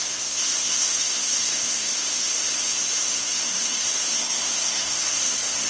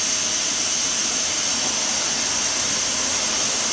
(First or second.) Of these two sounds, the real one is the second